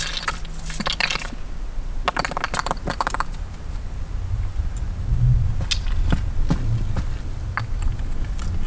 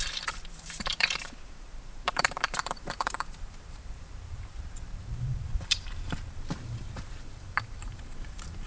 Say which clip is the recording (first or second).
first